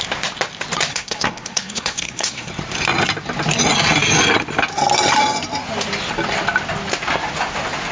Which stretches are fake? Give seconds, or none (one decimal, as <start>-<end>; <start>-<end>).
0.9-2.5